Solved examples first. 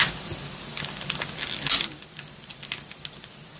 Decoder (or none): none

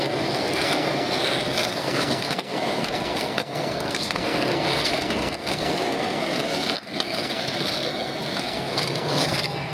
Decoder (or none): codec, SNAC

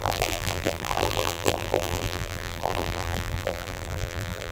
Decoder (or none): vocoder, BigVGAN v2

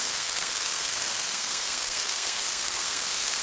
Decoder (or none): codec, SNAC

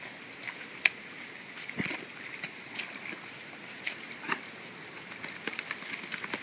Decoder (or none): none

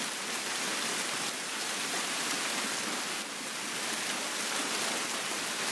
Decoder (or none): none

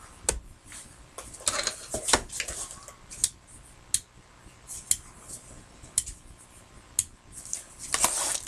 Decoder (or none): none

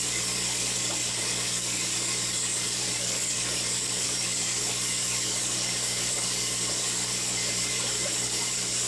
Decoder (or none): codec, DAC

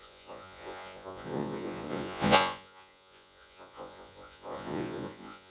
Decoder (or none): vocoder, Vocos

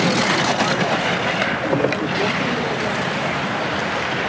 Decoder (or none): none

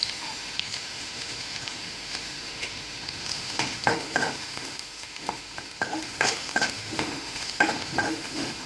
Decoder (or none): autoencoder, DAC-VAE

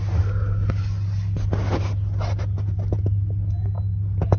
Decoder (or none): none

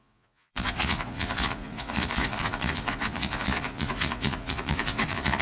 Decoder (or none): vocoder, Vocos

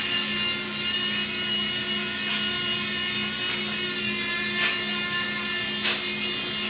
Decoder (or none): none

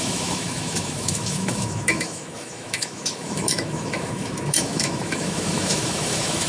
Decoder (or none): autoencoder, DAC-VAE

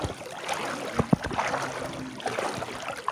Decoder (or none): none